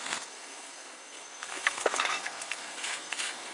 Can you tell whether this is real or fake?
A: fake